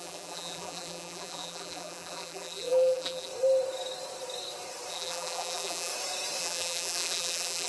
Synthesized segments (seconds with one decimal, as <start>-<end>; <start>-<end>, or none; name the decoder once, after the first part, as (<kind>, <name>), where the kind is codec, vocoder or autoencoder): 0.0-3.3 (vocoder, BigVGAN v2); 4.9-5.9; 6.4-7.7